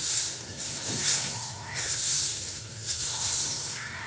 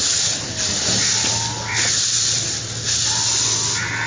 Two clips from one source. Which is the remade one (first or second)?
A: first